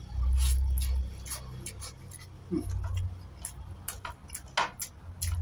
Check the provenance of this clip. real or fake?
real